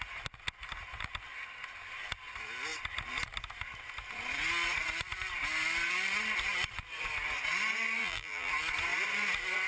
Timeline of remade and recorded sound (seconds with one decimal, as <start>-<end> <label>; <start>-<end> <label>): 0.0-8.0 recorded; 8.0-8.5 remade; 8.5-9.7 recorded